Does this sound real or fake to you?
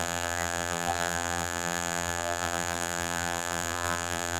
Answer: fake